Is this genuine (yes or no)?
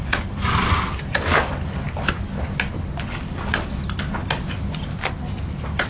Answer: yes